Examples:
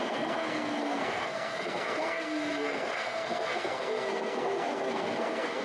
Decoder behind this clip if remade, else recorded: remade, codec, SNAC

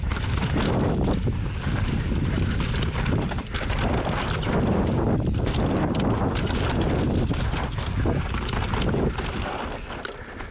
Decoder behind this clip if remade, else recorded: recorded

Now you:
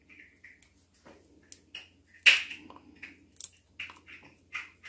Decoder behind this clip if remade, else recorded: recorded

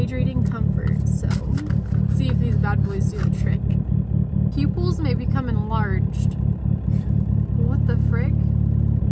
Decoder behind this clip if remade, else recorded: recorded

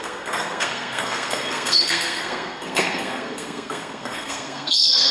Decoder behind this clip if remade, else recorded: remade, codec, SNAC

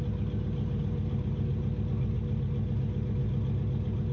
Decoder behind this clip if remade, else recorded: recorded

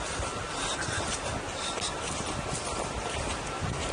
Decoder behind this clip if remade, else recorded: recorded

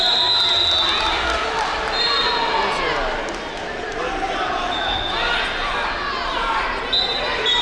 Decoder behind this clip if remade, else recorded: recorded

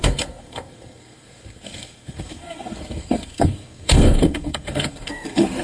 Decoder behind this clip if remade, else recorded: remade, codec, SNAC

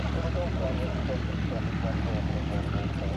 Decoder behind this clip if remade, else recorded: recorded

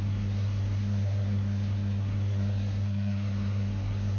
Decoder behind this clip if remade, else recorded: remade, codec, SNAC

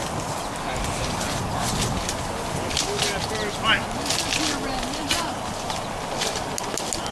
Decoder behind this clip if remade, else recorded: recorded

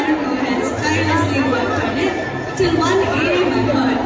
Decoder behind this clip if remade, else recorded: recorded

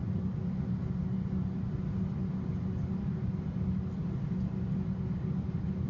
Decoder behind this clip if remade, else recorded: recorded